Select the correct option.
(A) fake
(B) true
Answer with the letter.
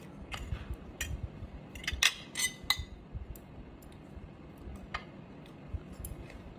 B